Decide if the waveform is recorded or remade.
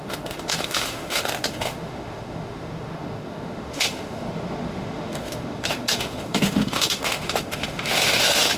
remade